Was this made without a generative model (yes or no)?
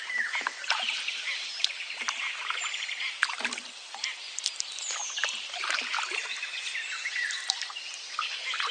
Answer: no